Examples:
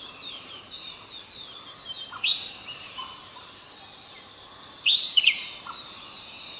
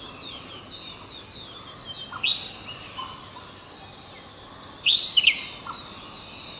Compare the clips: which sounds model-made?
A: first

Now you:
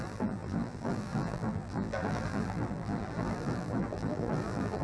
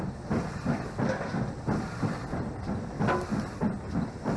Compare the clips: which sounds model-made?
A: first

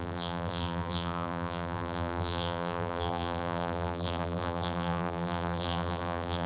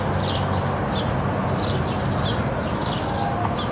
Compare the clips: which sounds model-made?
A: first